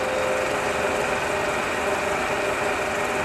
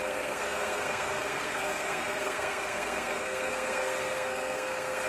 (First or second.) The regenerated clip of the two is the second